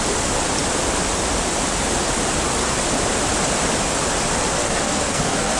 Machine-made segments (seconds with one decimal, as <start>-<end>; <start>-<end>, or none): 4.6-5.6